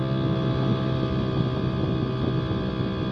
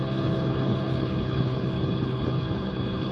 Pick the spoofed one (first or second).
second